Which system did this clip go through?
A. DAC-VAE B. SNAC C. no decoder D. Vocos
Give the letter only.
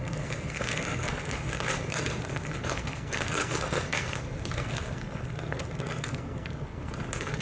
B